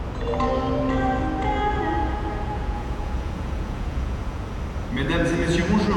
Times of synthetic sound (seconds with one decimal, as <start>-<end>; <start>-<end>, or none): 2.0-4.6